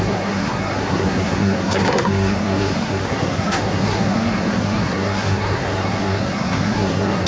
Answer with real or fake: fake